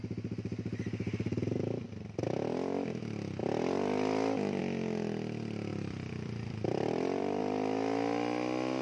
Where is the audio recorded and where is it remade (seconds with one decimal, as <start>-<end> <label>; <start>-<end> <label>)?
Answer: 0.0-5.7 recorded; 5.7-7.4 remade; 7.4-8.8 recorded